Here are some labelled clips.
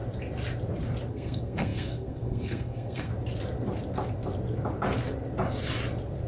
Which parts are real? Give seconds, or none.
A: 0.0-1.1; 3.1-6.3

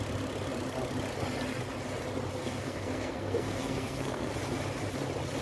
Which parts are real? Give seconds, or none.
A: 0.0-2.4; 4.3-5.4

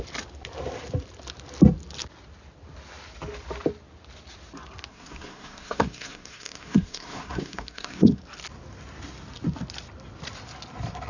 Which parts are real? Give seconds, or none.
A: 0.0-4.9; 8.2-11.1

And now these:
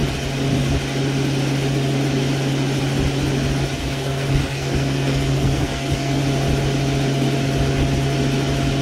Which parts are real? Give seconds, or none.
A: 0.0-3.8; 6.2-8.8

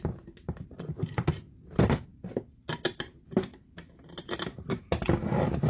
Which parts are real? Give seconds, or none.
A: 0.0-5.7

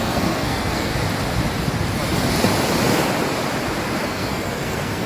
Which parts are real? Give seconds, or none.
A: 0.9-4.0